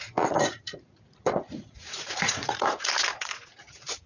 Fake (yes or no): yes